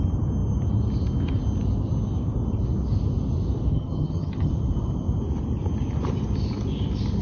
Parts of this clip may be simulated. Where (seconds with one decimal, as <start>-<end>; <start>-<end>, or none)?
3.7-4.5